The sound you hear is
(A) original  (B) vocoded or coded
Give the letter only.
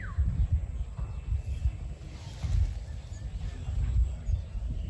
A